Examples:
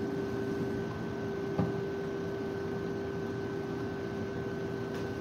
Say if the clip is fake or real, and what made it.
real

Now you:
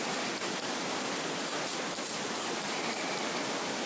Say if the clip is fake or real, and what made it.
real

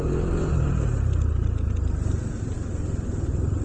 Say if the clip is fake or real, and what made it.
real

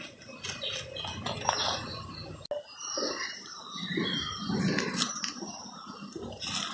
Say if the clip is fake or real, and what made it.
real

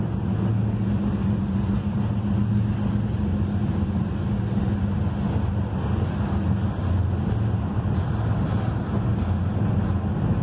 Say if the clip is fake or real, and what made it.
real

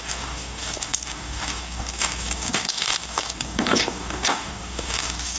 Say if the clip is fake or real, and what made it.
fake, codec, DAC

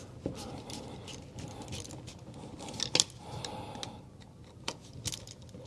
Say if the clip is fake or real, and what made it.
real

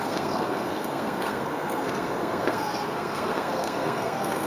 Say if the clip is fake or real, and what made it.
fake, codec, SNAC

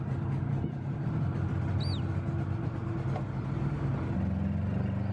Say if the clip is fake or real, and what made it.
real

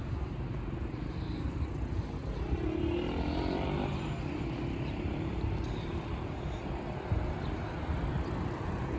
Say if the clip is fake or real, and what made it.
real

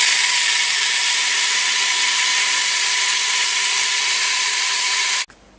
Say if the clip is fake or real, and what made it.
real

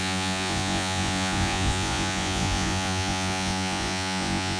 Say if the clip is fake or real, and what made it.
fake, vocoder, Vocos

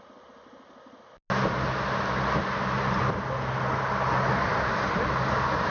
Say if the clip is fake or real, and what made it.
real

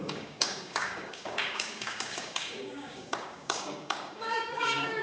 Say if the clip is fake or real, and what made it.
fake, codec, DAC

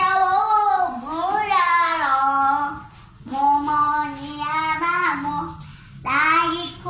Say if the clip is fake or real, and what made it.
real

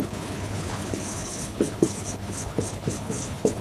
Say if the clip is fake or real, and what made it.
fake, codec, HILCodec